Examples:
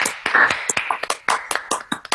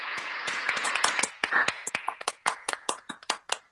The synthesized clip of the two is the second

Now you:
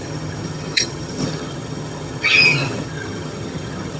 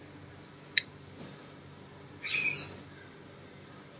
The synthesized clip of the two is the first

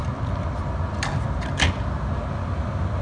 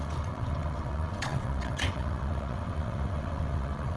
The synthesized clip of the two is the second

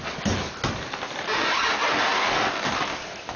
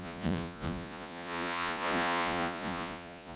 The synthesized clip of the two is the second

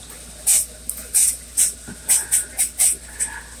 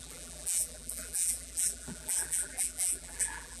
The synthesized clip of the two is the second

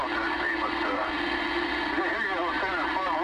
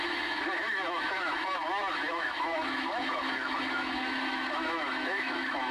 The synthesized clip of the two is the second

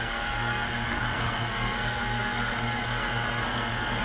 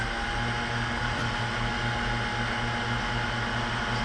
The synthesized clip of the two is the first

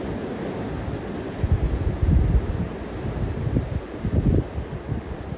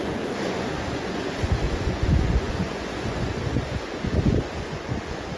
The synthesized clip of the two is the second